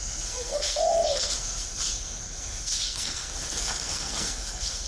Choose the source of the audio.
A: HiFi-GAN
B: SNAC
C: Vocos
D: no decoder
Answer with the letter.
B